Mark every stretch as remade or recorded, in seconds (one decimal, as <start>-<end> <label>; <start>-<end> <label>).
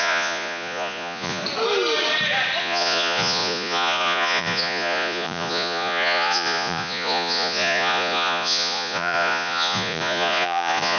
0.0-1.4 remade; 1.4-2.6 recorded; 2.6-11.0 remade